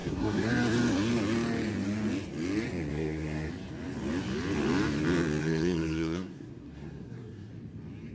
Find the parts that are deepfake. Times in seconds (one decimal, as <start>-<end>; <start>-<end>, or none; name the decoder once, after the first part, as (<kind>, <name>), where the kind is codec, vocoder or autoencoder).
0.0-0.5 (codec, SNAC); 2.9-3.5; 5.4-7.5